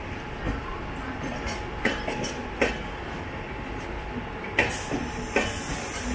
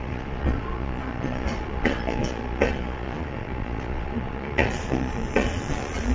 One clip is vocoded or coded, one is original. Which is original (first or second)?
first